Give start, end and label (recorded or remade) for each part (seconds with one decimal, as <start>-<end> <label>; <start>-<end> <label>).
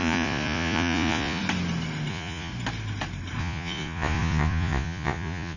0.0-1.4 remade; 1.4-2.1 recorded; 2.1-2.5 remade; 2.5-3.4 recorded; 3.4-5.6 remade